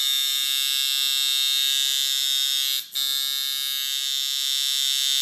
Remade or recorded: recorded